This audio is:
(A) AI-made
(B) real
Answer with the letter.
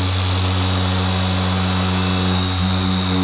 B